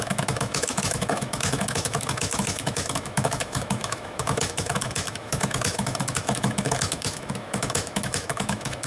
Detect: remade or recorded remade